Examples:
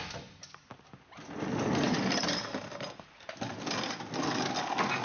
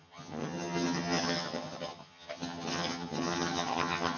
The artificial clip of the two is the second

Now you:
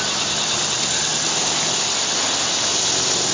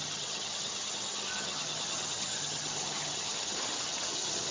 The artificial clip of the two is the second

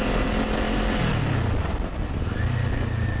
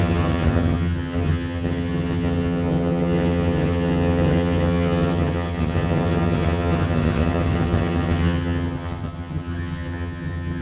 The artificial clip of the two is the second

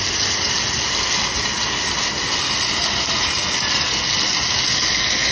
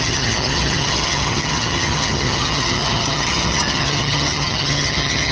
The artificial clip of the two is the second